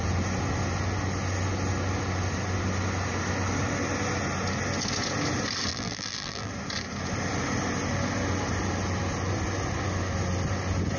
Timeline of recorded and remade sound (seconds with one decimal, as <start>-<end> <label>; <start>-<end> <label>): 0.0-5.7 recorded; 5.7-6.5 remade; 6.5-11.0 recorded